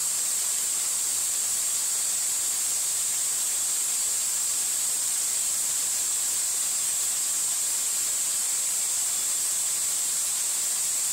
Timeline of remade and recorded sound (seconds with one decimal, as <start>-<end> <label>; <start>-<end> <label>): 0.0-1.6 remade; 1.6-4.5 recorded; 4.5-5.9 remade; 5.9-11.1 recorded